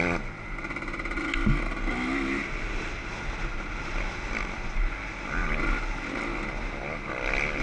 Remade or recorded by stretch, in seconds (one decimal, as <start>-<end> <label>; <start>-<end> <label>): 0.0-7.6 recorded